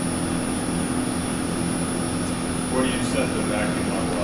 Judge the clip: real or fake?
real